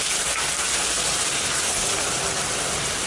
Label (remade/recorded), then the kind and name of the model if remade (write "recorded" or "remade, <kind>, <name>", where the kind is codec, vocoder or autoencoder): recorded